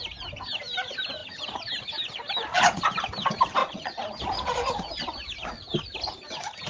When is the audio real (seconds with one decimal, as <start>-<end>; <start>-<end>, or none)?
0.0-3.6; 4.1-6.7